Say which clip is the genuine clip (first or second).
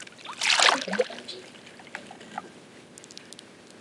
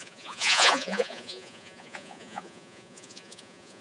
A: first